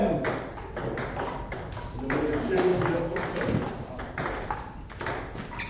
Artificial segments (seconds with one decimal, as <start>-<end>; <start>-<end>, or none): 0.0-0.5; 2.7-4.6